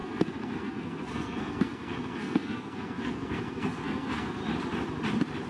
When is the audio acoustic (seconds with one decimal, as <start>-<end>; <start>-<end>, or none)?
4.4-5.5